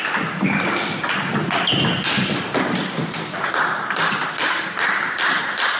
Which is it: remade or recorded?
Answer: recorded